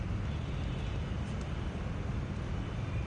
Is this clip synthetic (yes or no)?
no